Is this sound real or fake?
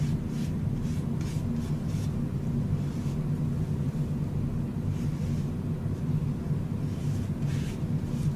real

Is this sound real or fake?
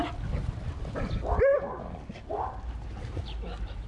real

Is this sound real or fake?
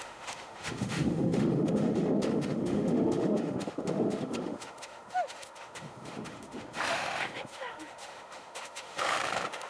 fake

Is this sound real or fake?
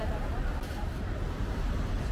fake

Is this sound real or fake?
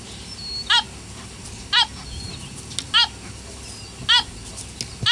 real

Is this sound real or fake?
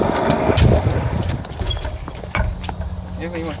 real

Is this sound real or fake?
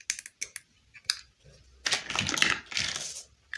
real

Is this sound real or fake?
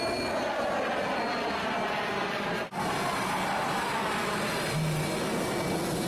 real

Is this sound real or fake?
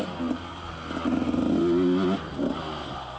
real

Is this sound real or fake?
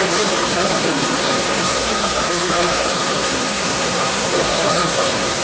fake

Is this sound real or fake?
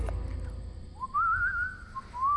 real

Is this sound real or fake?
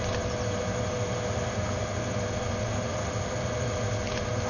real